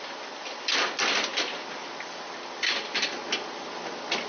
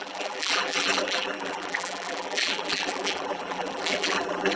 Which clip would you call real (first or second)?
first